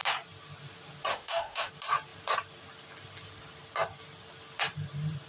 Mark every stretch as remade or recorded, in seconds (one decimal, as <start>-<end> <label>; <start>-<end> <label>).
0.0-1.1 recorded; 1.1-1.7 remade; 1.7-5.3 recorded